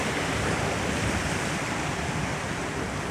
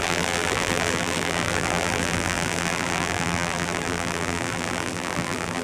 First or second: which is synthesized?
second